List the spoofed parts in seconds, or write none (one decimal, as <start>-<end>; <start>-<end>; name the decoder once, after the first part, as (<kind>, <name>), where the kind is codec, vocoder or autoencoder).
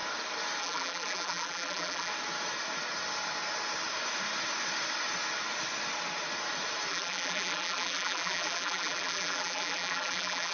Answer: 0.6-2.1 (vocoder, BigVGAN v2); 6.9-10.5